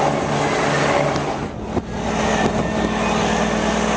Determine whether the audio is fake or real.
real